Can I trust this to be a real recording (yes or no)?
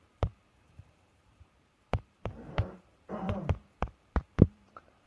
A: no